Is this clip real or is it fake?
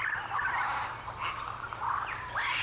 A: real